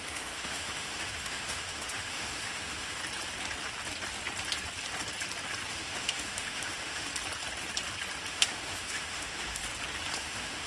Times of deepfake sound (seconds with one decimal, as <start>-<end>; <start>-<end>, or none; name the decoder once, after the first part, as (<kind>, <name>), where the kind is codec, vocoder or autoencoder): 0.0-3.0 (autoencoder, DAC-VAE); 5.7-7.1; 8.3-9.6; 10.2-10.7